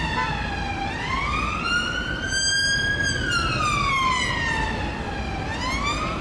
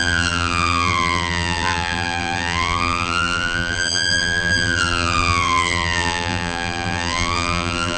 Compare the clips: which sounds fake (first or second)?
second